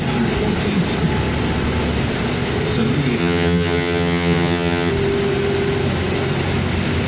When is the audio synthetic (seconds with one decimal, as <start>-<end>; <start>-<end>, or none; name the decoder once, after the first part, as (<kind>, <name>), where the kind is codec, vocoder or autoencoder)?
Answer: 3.2-4.9 (vocoder, HiFi-GAN)